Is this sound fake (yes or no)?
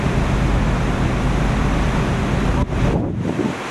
no